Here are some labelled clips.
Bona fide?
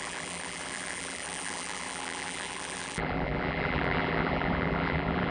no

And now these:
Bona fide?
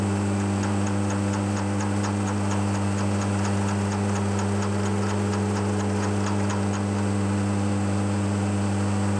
yes